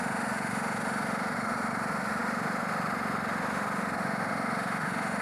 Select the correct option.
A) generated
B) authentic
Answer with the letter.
A